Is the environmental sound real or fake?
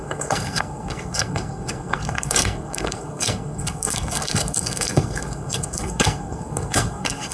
fake